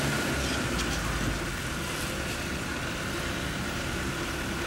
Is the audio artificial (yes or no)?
no